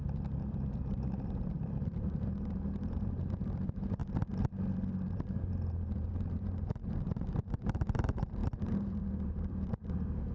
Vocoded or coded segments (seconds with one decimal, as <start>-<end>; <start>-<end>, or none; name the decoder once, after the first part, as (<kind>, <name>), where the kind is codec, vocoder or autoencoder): 0.0-4.0 (vocoder, BigVGAN v2); 5.1-10.3